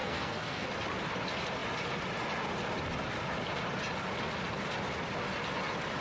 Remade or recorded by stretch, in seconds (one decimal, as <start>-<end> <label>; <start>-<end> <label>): 0.0-0.7 remade; 0.7-6.0 recorded